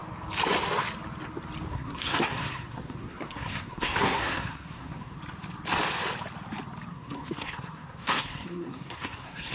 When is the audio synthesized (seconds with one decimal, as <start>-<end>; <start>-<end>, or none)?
1.7-5.2; 6.9-9.5